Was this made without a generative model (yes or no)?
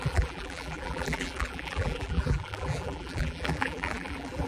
no